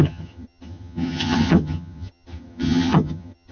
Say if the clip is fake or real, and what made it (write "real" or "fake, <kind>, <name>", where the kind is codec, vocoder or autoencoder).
fake, vocoder, HiFi-GAN